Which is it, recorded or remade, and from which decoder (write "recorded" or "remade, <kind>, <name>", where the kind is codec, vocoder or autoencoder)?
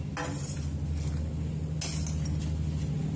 recorded